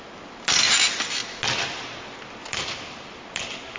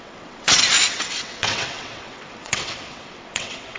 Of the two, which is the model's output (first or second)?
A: second